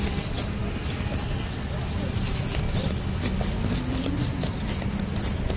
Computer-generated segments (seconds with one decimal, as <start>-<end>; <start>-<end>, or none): none